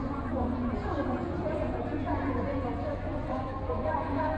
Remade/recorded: remade